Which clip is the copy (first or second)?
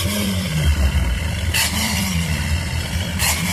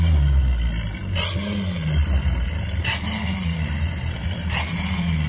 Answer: first